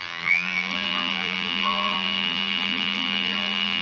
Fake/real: fake